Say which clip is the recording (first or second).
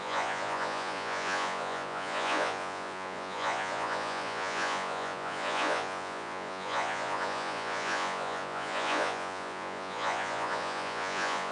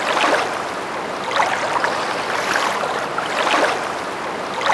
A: second